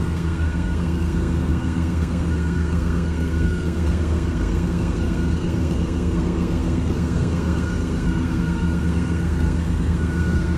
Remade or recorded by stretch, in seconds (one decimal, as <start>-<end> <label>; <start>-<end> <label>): 0.0-10.6 remade